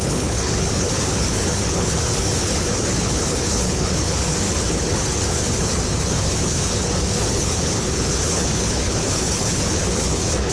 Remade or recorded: remade